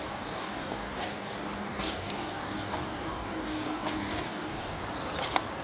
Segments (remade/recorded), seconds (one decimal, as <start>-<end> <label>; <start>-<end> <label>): 0.0-4.8 remade; 4.8-5.6 recorded